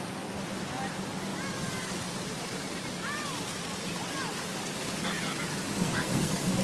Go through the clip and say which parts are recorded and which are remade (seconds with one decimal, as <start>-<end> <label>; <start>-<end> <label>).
0.0-5.8 recorded; 5.8-6.6 remade